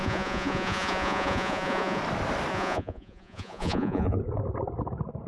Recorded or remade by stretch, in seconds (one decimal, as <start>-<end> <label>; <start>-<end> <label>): 0.0-2.0 remade; 2.0-2.5 recorded; 2.5-4.2 remade; 4.2-5.3 recorded